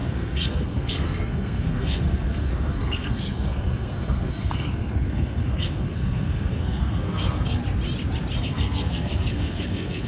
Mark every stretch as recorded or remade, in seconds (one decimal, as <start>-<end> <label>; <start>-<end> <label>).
0.0-7.6 remade; 7.6-8.4 recorded; 8.4-10.1 remade